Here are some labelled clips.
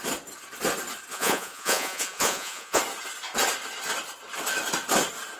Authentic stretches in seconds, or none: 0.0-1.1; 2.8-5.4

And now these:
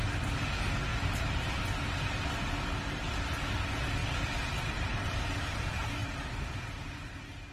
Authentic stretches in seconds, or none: 0.0-0.9; 1.5-4.0; 5.4-6.0

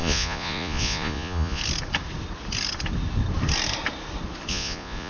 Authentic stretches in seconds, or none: 1.6-4.5

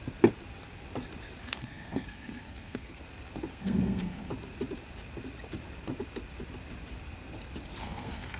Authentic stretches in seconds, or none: 0.0-1.4; 3.0-3.5; 4.3-7.8